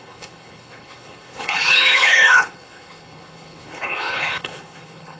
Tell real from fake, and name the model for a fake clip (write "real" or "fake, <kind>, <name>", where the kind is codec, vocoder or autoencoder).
fake, codec, HILCodec